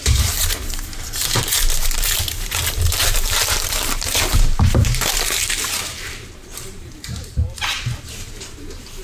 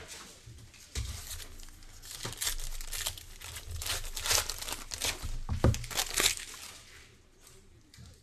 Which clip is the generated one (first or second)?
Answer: first